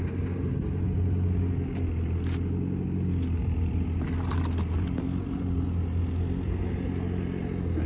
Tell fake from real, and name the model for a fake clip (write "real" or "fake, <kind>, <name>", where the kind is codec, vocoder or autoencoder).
real